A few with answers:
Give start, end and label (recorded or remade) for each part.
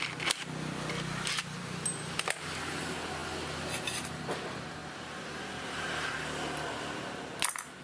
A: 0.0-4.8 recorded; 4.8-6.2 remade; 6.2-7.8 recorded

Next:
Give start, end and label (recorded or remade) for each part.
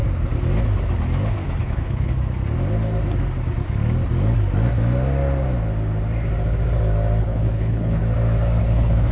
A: 0.0-1.6 recorded; 1.6-2.1 remade; 2.1-7.2 recorded; 7.2-8.0 remade; 8.0-8.6 recorded; 8.6-9.1 remade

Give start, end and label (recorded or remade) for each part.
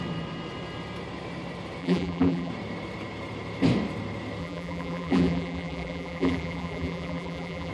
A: 0.0-1.8 recorded; 1.8-2.5 remade; 2.5-4.4 recorded; 4.4-7.7 remade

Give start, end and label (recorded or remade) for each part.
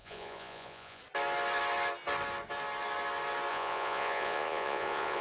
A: 0.0-1.0 remade; 1.0-3.5 recorded; 3.5-5.2 remade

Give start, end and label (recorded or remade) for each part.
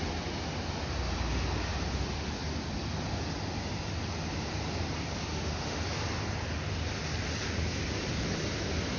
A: 0.0-5.3 recorded; 5.3-5.8 remade; 5.8-9.0 recorded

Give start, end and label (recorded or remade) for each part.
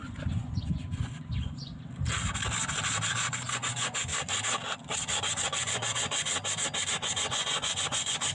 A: 0.0-1.7 remade; 1.7-3.1 recorded; 3.1-4.1 remade; 4.1-5.2 recorded; 5.2-6.3 remade; 6.3-6.9 recorded; 6.9-8.3 remade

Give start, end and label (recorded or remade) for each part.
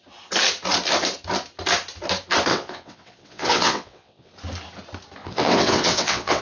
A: 0.0-2.5 recorded; 2.5-4.3 remade; 4.3-5.2 recorded; 5.2-6.4 remade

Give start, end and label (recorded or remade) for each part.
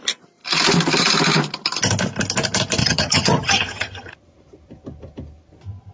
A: 0.0-2.8 recorded; 2.8-4.1 remade; 4.1-5.9 recorded